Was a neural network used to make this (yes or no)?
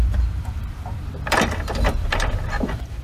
yes